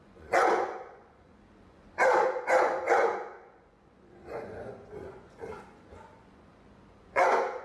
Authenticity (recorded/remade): remade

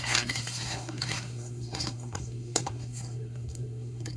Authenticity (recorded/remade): remade